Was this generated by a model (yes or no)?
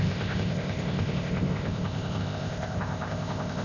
yes